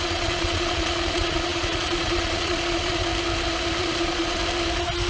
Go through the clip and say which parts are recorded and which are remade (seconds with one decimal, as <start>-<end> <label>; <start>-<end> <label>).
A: 0.0-3.1 remade; 3.1-3.8 recorded; 3.8-4.4 remade; 4.4-5.1 recorded